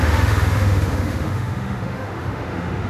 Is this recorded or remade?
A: remade